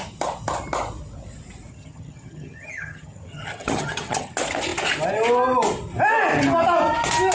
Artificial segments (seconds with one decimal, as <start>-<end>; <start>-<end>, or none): 1.7-4.3